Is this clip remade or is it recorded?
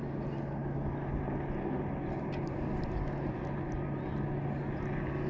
recorded